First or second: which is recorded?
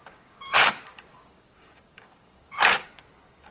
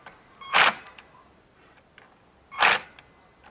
second